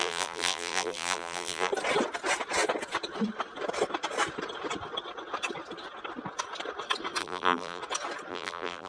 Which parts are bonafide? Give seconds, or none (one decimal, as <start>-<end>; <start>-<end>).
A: 1.7-7.2; 7.8-8.3